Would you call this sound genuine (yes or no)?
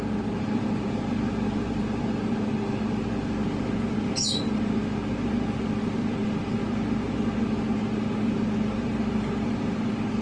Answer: yes